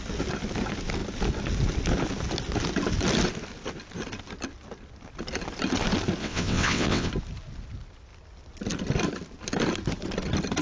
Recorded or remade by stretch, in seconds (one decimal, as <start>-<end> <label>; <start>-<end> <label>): 0.0-6.2 recorded; 6.2-7.1 remade; 7.1-10.6 recorded